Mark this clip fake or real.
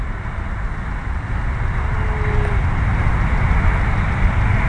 real